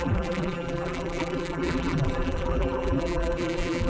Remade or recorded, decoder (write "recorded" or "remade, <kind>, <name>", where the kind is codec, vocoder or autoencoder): remade, vocoder, BigVGAN v2